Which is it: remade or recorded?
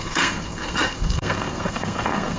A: remade